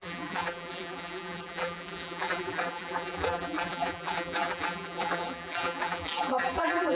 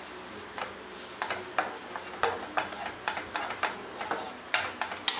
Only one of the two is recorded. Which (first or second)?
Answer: second